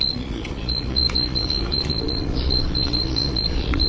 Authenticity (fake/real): fake